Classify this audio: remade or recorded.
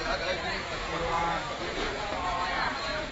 remade